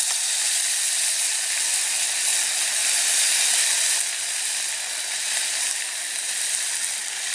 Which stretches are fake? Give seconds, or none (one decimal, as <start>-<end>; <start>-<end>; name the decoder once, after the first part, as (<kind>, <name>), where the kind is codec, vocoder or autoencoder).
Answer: none